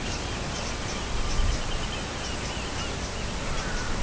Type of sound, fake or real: real